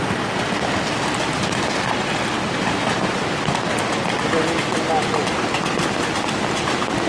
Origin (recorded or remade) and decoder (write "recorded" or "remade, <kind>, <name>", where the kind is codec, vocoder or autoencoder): recorded